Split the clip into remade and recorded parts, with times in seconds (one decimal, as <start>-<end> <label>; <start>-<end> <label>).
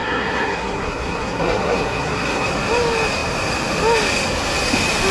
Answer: 0.0-2.5 remade; 2.5-5.1 recorded